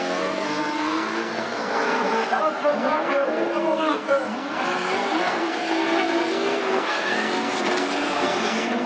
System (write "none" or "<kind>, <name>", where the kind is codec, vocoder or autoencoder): codec, SNAC